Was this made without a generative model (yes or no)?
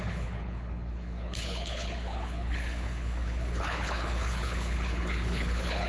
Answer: no